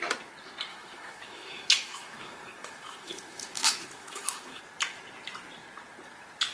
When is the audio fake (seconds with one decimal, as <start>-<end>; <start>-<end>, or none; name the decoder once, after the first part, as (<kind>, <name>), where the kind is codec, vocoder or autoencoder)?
0.7-4.6 (autoencoder, DAC-VAE)